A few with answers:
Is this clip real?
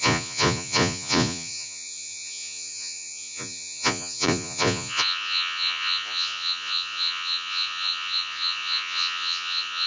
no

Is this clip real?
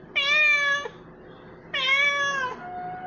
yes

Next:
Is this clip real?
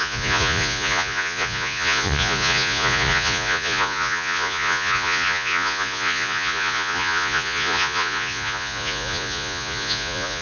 no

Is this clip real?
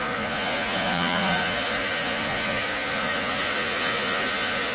no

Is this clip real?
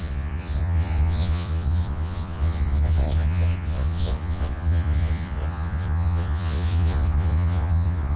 no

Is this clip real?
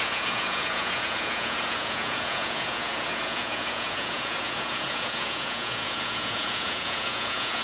no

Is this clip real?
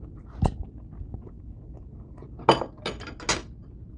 yes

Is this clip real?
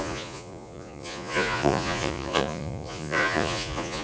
no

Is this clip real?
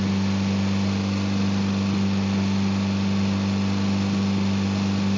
yes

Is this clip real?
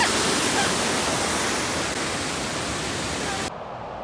yes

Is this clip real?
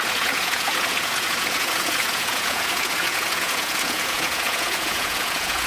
no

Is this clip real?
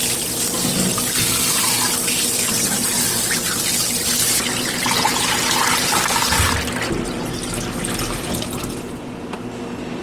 yes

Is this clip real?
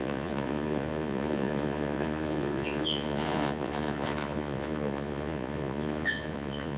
no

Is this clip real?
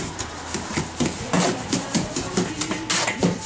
yes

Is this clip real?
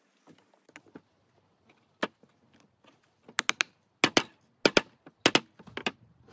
yes